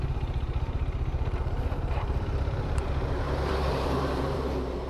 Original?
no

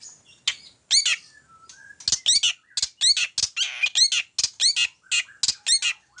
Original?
yes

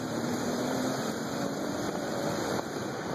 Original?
no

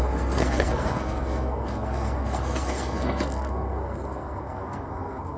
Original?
no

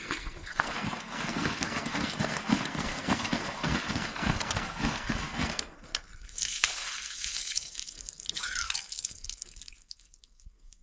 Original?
no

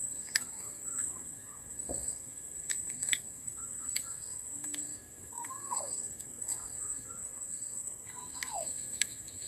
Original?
no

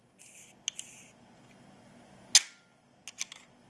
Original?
yes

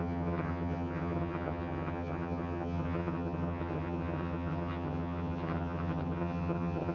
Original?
no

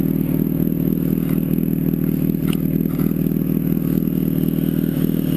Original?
yes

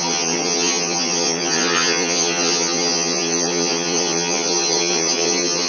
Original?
no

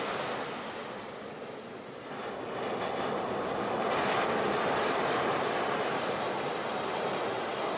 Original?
yes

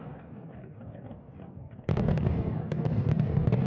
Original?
no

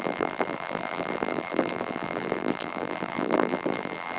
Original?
no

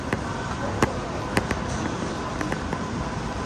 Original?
yes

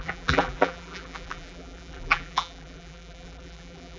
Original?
no